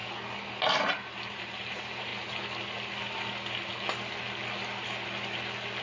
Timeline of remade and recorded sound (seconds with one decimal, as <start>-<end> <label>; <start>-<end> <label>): 0.0-1.4 recorded; 1.4-2.1 remade; 2.1-5.8 recorded